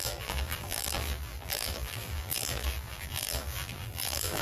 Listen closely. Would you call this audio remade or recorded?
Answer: remade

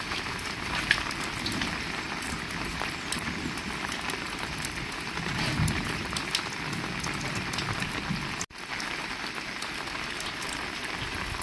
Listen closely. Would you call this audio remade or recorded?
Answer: recorded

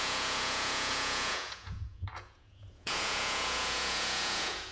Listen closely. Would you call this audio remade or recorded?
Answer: remade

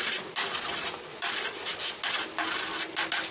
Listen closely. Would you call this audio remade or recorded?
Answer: recorded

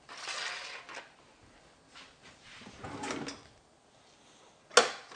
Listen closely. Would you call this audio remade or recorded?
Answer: recorded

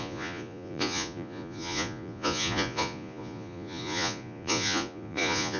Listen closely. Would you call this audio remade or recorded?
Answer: remade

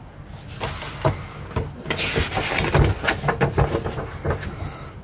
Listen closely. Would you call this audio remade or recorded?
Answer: recorded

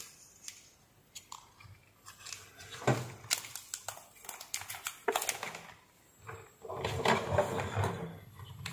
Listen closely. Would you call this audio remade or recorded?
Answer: recorded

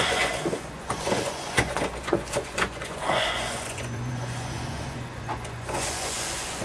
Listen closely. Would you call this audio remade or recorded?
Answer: remade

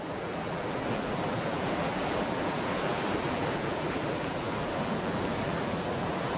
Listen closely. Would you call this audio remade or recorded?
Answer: remade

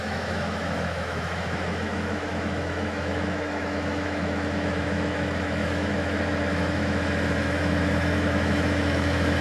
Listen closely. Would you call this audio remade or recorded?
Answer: remade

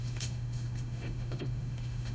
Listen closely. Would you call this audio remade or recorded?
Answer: remade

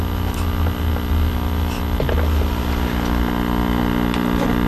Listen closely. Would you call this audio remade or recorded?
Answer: recorded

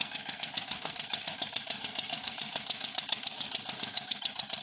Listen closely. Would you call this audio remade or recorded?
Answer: remade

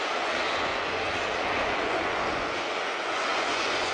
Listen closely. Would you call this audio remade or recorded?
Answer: remade